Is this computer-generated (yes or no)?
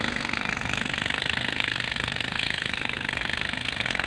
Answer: yes